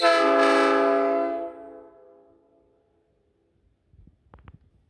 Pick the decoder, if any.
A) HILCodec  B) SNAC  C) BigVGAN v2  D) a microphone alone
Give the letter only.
D